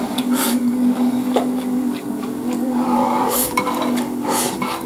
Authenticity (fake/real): fake